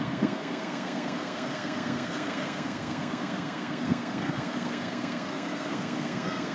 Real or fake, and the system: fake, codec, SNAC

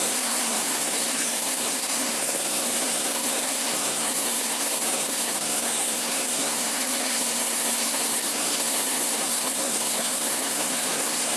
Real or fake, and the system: fake, codec, SNAC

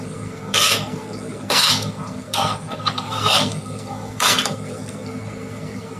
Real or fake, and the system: fake, codec, SNAC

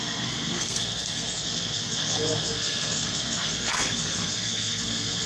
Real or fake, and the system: fake, codec, SNAC